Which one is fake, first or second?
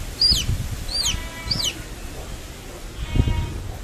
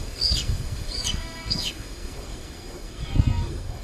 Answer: second